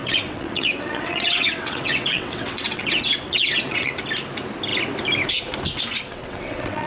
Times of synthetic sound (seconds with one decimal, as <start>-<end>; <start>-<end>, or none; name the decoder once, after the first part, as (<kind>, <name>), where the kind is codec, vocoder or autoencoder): 0.0-3.9 (vocoder, WaveNeXt); 6.1-6.9